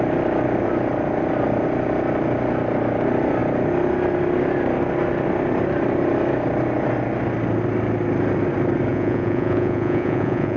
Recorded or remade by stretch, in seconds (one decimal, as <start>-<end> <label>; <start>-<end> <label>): 0.0-8.9 recorded; 8.9-10.6 remade